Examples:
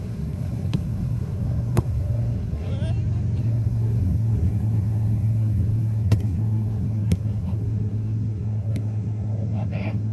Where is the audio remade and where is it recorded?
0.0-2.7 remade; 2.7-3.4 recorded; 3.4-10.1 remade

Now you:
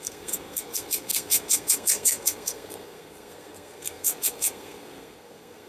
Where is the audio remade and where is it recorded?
0.0-5.7 remade